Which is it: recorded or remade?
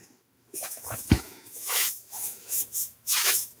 remade